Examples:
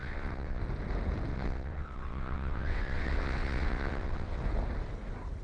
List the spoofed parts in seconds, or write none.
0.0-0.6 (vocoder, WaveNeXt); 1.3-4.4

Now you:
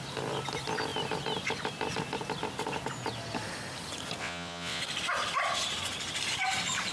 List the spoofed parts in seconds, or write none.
4.2-4.8 (vocoder, WaveNeXt)

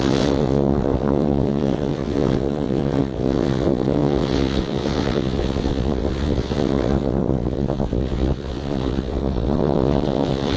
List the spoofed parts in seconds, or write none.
0.0-10.6 (vocoder, WaveNeXt)